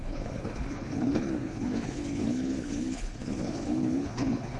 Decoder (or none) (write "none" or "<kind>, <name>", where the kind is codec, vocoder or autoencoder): codec, HILCodec